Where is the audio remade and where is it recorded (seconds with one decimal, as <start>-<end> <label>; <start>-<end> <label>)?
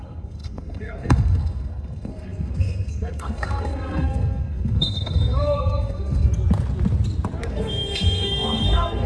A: 0.0-6.3 remade; 6.3-7.5 recorded; 7.5-9.1 remade